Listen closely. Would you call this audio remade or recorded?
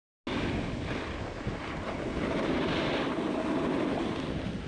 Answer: recorded